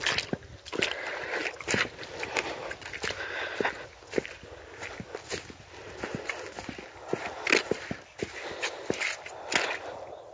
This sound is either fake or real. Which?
real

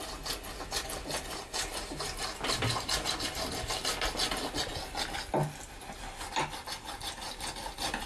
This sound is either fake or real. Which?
real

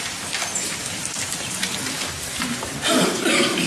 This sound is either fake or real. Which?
real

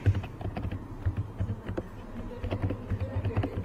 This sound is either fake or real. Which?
fake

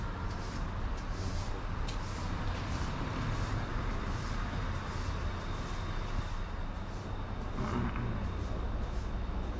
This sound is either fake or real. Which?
real